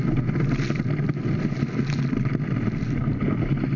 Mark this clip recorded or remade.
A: recorded